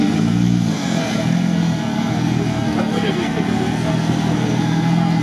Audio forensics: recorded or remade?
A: remade